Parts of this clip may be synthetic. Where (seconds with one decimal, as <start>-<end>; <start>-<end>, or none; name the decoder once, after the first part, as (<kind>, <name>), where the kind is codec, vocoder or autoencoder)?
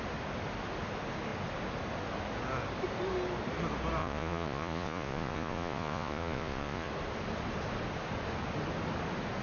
4.0-6.9 (vocoder, Vocos)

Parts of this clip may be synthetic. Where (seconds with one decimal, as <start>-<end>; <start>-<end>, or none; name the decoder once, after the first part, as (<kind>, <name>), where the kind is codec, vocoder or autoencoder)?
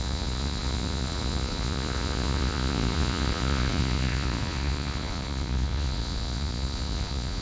0.0-7.4 (vocoder, Vocos)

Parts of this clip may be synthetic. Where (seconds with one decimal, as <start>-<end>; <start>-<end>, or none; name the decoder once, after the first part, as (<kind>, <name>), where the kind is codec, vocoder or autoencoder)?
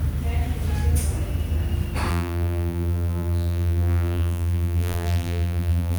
2.1-6.0 (vocoder, BigVGAN v2)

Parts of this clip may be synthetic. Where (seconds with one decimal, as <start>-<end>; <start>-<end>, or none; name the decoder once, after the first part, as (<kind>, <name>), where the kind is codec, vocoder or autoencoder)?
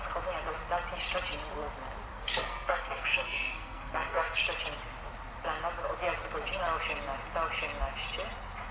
2.1-4.4 (codec, SNAC)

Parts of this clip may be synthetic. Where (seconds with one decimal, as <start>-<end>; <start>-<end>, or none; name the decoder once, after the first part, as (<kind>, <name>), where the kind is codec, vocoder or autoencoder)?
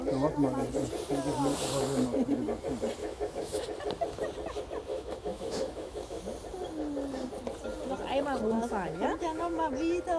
3.0-3.6 (autoencoder, DAC-VAE); 4.9-6.2; 8.5-9.7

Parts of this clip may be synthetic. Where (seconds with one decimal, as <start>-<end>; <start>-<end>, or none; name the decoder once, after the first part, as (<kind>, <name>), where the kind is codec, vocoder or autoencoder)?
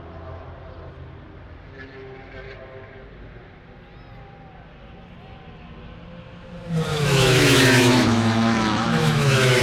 6.9-9.6 (autoencoder, DAC-VAE)